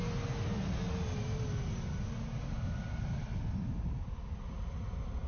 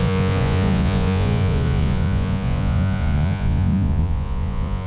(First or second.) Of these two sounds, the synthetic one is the second